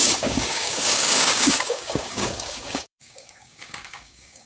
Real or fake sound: fake